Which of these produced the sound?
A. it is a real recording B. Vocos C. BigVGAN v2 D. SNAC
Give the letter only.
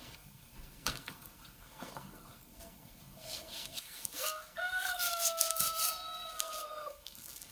D